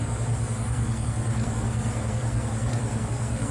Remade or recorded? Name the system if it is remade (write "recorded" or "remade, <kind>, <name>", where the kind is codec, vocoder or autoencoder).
remade, codec, SNAC